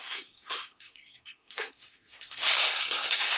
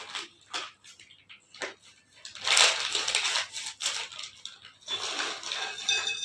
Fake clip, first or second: first